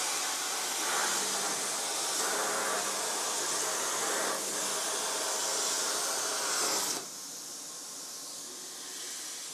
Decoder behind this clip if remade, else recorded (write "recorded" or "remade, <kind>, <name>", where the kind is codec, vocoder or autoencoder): recorded